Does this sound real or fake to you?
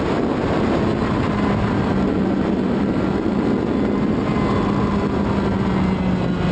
real